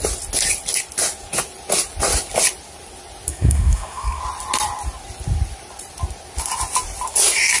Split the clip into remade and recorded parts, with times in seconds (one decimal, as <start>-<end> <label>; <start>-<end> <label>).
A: 0.0-3.3 recorded; 3.3-4.2 remade; 4.2-7.6 recorded